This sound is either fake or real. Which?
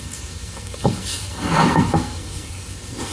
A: fake